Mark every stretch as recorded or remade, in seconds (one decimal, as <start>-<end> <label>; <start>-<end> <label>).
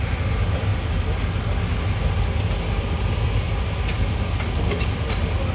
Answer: 0.0-5.5 recorded